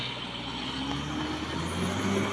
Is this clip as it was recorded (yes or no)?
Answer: yes